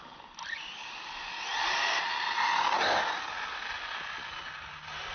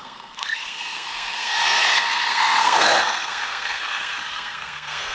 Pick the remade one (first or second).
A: second